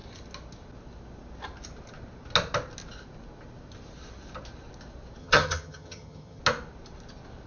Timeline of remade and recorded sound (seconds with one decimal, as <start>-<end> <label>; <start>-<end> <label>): 0.0-5.2 recorded; 5.2-6.4 remade; 6.4-7.5 recorded

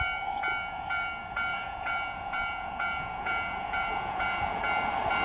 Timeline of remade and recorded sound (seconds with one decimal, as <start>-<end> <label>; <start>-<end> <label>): 0.0-1.5 recorded; 1.5-4.6 remade; 4.6-5.2 recorded

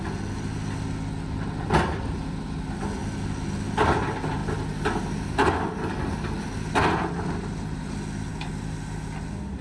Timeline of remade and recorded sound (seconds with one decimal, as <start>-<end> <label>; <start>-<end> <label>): 0.0-9.6 recorded

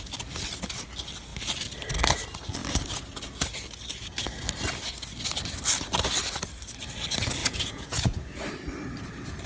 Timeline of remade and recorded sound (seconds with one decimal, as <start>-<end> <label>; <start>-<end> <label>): 0.0-7.4 recorded; 7.4-8.4 remade; 8.4-9.5 recorded

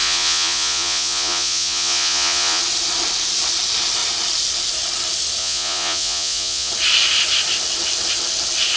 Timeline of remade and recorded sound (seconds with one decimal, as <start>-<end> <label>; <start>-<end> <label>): 0.0-2.6 remade; 2.6-5.4 recorded; 5.4-6.7 remade; 6.7-8.8 recorded

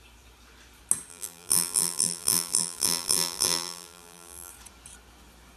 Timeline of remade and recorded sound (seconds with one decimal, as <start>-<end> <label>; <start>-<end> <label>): 0.0-1.1 recorded; 1.1-4.5 remade; 4.5-5.6 recorded

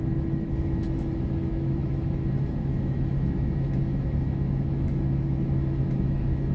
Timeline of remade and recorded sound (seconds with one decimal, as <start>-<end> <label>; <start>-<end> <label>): 0.0-6.5 remade